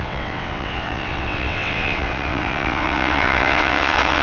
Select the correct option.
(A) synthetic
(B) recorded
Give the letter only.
A